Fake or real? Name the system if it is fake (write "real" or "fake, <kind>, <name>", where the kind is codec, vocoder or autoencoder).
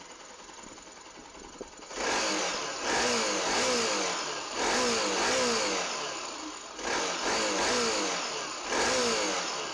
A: real